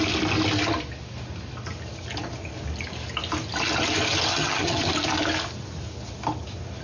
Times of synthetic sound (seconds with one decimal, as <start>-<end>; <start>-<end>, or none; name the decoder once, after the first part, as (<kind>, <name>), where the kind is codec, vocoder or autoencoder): 4.3-4.8 (vocoder, HiFi-GAN)